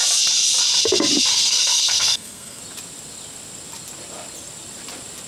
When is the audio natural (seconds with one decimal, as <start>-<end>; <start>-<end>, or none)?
0.0-1.3; 2.6-5.3